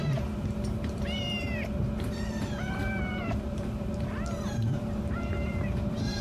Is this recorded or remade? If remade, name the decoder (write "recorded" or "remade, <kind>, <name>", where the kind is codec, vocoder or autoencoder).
remade, vocoder, BigVGAN v2